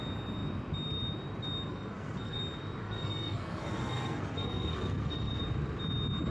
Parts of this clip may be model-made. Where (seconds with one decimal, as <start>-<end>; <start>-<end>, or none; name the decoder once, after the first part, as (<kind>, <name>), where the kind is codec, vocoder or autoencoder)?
1.7-2.4 (codec, SNAC); 2.8-5.4